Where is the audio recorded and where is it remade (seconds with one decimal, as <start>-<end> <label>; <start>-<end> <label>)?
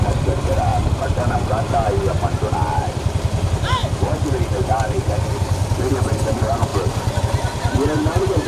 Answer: 0.0-0.7 remade; 0.7-2.7 recorded; 2.7-3.8 remade; 3.8-4.9 recorded; 4.9-6.7 remade; 6.7-7.2 recorded; 7.2-8.5 remade